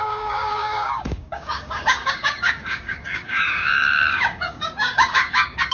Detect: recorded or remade remade